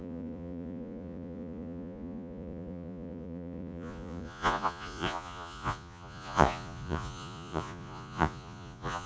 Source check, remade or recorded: remade